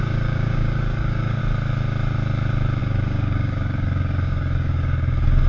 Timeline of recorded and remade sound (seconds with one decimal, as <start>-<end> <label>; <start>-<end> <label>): 0.0-1.4 remade; 1.4-2.8 recorded; 2.8-5.5 remade